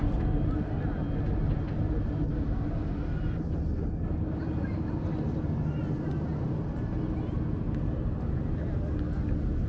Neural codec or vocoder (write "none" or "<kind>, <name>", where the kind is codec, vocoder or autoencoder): none